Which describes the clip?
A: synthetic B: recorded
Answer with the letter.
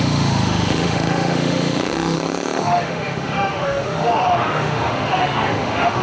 A